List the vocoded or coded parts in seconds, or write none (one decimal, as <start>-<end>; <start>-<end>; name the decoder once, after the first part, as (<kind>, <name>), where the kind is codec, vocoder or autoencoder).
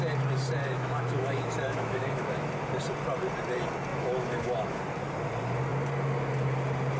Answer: 0.6-2.5 (autoencoder, DAC-VAE); 3.9-4.8